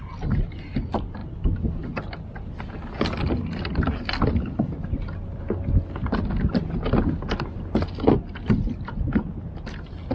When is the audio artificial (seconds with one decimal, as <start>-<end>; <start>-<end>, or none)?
none